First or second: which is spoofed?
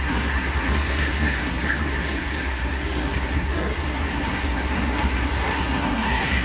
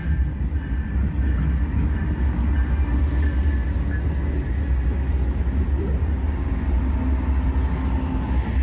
first